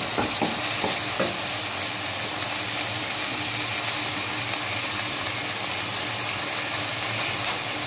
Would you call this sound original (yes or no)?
yes